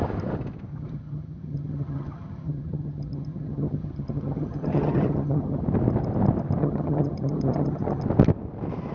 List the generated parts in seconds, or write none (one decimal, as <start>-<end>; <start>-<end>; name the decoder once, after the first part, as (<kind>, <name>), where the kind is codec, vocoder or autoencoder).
0.7-5.6 (vocoder, HiFi-GAN); 6.6-8.0